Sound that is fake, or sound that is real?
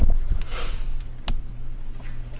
real